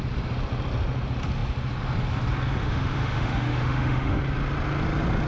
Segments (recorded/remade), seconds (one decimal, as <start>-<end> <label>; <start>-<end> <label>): 0.0-2.6 recorded; 2.6-4.2 remade; 4.2-5.3 recorded